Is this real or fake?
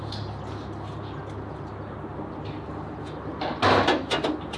real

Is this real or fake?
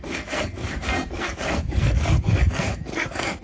fake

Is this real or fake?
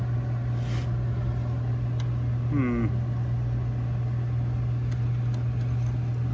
real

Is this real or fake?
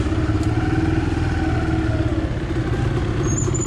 real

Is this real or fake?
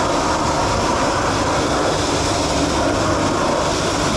real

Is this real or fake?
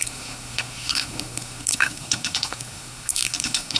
fake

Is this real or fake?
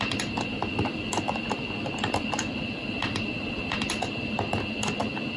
real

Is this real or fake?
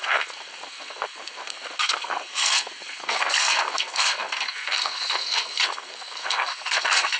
fake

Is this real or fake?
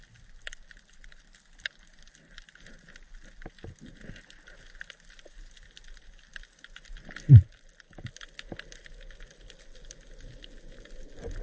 real